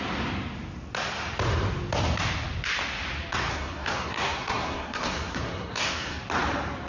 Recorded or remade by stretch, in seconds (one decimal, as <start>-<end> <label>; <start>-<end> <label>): 0.0-3.5 recorded; 3.5-6.2 remade; 6.2-6.9 recorded